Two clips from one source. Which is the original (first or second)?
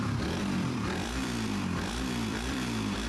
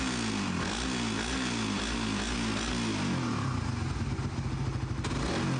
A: second